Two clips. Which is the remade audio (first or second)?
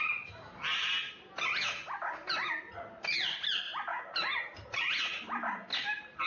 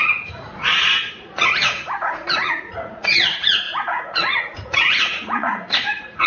second